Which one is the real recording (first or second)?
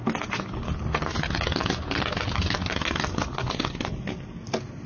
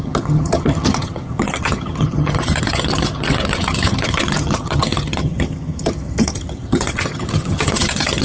first